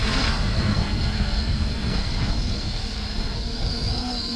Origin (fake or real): fake